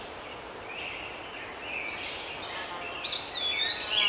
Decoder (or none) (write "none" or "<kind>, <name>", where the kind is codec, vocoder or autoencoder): none